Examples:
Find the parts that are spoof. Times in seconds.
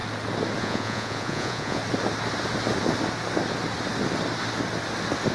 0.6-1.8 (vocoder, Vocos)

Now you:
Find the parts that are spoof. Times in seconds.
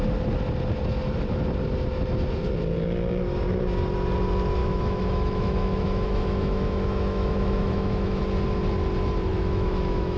4.6-8.2 (autoencoder, DAC-VAE); 9.3-10.2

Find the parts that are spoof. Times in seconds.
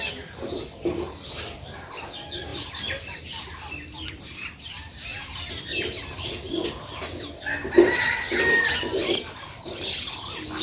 none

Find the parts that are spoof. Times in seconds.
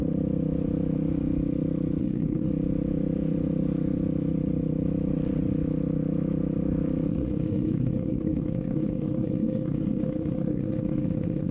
2.0-2.5 (codec, SNAC); 7.1-11.5